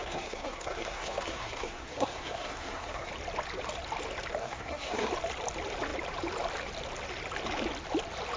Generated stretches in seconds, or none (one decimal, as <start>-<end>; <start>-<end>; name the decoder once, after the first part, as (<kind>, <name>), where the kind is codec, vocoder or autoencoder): 0.0-3.1 (codec, SNAC); 4.4-5.1